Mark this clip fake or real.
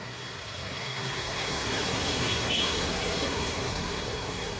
fake